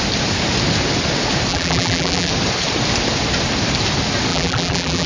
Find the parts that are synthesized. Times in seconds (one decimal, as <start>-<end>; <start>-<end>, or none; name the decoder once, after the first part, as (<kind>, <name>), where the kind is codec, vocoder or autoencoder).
1.5-2.3 (vocoder, BigVGAN v2); 4.3-5.1